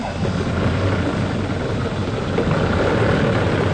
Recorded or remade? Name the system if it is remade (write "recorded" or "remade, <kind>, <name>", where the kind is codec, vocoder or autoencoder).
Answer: recorded